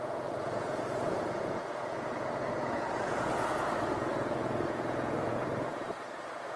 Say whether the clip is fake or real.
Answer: fake